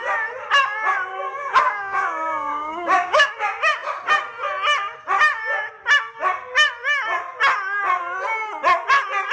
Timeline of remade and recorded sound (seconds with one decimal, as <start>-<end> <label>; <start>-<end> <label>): 0.0-1.1 recorded; 1.1-3.3 remade; 3.3-9.3 recorded